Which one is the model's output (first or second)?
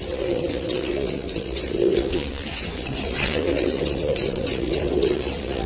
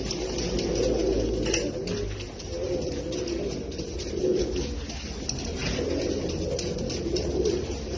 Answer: first